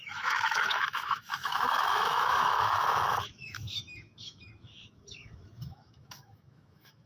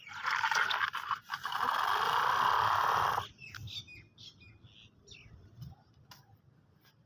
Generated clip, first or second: first